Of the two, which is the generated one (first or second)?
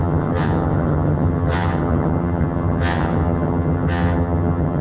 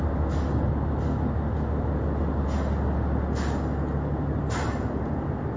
first